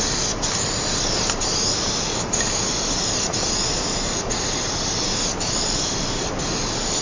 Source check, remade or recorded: recorded